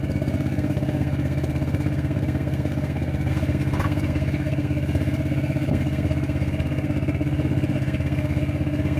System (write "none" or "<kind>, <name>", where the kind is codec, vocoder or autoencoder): codec, SNAC